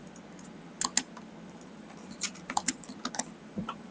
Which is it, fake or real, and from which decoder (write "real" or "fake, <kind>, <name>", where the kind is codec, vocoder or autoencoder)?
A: real